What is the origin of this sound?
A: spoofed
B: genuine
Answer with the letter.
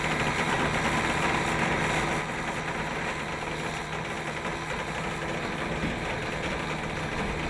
B